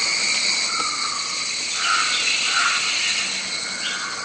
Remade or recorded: recorded